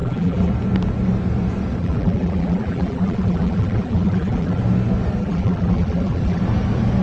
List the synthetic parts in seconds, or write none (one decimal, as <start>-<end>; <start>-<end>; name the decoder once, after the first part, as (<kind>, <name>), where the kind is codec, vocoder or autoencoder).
0.0-0.5 (vocoder, BigVGAN v2); 1.8-4.6; 5.2-6.4